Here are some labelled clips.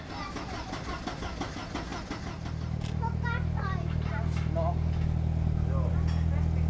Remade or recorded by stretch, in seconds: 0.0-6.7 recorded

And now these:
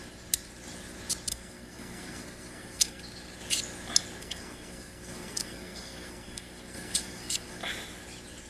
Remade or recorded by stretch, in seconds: 0.0-1.3 recorded; 1.3-3.0 remade; 3.0-4.2 recorded; 4.2-7.6 remade; 7.6-8.5 recorded

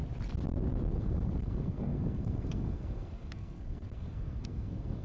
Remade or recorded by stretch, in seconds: 0.0-1.0 recorded; 1.0-5.0 remade

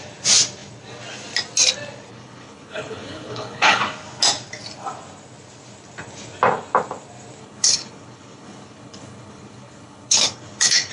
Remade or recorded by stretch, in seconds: 0.0-2.1 recorded; 2.1-3.8 remade; 3.8-7.4 recorded; 7.4-10.9 remade

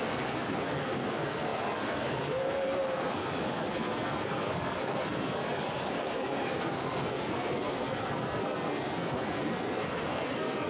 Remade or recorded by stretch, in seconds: 0.0-10.7 remade

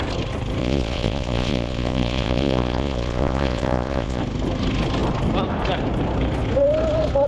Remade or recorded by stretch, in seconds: 0.0-0.6 recorded; 0.6-4.2 remade; 4.2-7.3 recorded